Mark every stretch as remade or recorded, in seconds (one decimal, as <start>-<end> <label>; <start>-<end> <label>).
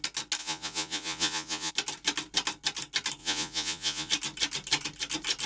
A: 0.0-0.4 recorded; 0.4-1.7 remade; 1.7-3.2 recorded; 3.2-4.1 remade; 4.1-5.5 recorded